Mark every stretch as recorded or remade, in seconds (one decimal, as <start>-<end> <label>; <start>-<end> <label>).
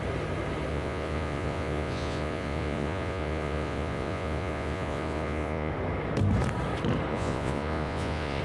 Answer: 0.0-0.7 recorded; 0.7-5.7 remade; 5.7-7.1 recorded; 7.1-8.4 remade